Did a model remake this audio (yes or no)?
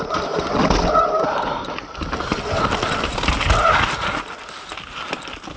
no